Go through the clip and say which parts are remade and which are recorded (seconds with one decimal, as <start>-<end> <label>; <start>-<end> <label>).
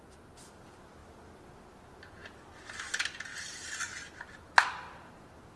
0.0-5.6 recorded